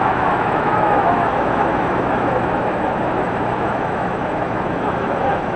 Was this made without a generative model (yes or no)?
no